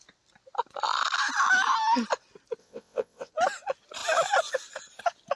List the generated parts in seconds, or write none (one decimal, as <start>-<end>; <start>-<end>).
2.6-3.3